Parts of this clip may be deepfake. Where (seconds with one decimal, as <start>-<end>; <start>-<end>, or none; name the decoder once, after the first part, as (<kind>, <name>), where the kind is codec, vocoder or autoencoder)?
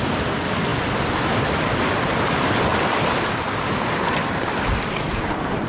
none